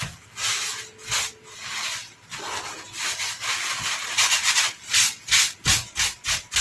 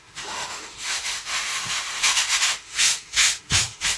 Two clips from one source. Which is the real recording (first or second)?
first